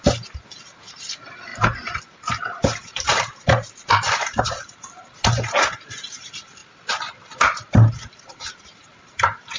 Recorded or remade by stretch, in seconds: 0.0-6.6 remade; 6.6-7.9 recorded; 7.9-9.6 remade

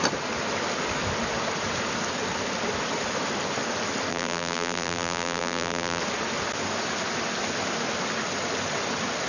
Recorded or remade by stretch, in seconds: 0.0-4.1 recorded; 4.1-6.0 remade; 6.0-9.3 recorded

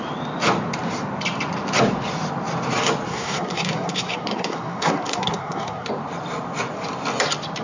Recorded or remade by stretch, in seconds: 0.0-3.1 recorded; 3.1-5.9 remade; 5.9-7.6 recorded

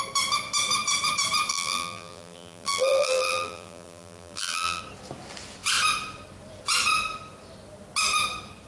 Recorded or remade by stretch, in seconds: 0.0-1.5 recorded; 1.5-4.8 remade; 4.8-8.7 recorded

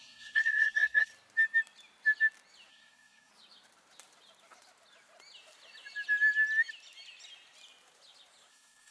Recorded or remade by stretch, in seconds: 0.0-1.1 remade; 1.1-2.7 recorded; 2.7-3.3 remade; 3.3-8.5 recorded; 8.5-8.9 remade

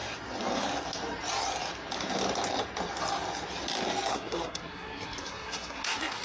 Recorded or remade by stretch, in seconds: 0.0-4.1 recorded; 4.1-6.2 remade

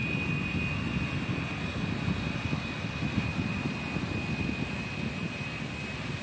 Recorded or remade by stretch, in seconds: 0.0-6.2 recorded